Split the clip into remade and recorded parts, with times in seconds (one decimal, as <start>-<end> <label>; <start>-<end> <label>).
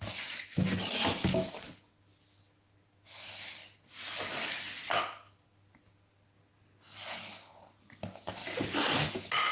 0.0-9.5 recorded